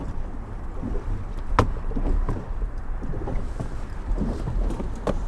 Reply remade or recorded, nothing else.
recorded